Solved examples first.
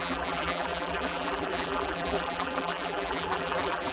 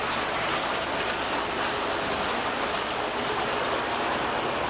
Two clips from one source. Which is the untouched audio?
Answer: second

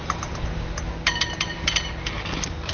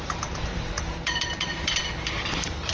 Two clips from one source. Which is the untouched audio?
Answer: first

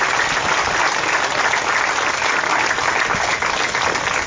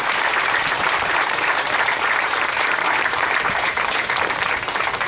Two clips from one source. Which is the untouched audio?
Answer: first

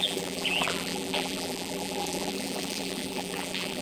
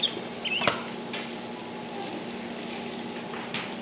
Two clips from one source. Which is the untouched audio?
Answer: second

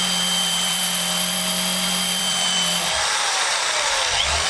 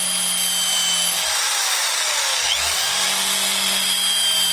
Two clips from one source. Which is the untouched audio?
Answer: second